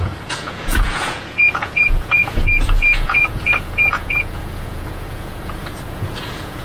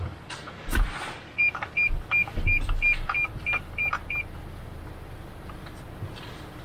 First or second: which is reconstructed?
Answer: first